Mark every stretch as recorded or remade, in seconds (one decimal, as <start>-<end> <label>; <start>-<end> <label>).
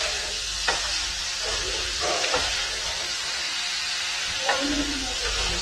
0.0-1.3 recorded; 1.3-4.7 remade; 4.7-5.6 recorded